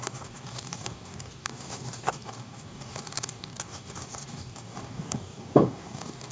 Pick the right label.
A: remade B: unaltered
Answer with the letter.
A